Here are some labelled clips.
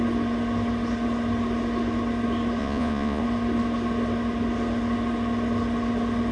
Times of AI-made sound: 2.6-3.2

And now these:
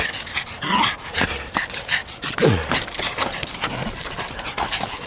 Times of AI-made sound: none

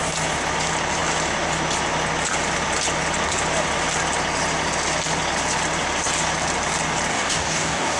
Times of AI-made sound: 7.1-8.0

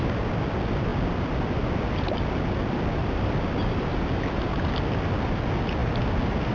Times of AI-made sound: none

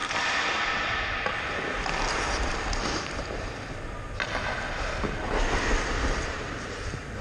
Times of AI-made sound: 2.1-2.5; 6.2-7.2

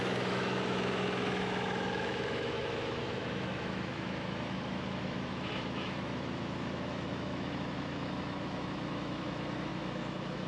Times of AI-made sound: 0.0-10.5

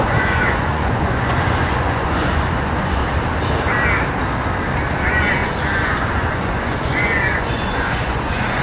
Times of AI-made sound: 0.0-3.0; 5.0-8.6